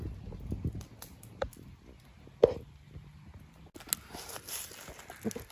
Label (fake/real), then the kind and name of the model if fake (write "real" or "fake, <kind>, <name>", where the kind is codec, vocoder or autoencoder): real